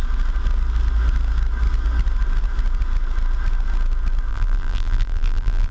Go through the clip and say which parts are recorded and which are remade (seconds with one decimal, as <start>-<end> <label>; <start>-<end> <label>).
0.0-4.3 recorded; 4.3-5.7 remade